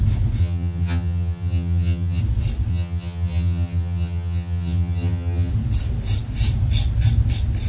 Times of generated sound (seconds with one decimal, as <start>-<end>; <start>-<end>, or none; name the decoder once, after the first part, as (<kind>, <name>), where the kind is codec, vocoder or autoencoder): 0.4-2.2 (vocoder, HiFi-GAN); 2.7-5.5